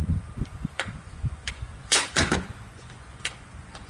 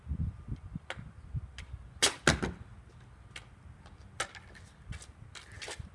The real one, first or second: second